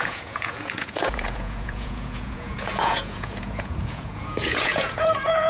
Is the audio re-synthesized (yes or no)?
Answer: yes